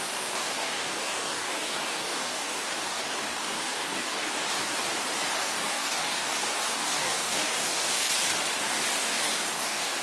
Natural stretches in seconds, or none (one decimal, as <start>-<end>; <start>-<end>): 4.7-5.4; 8.1-8.6